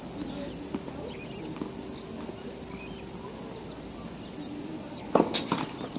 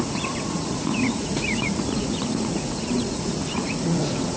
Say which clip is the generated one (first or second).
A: second